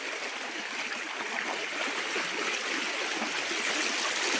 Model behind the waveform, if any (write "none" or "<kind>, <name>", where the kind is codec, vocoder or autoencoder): none